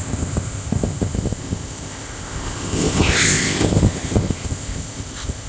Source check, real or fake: fake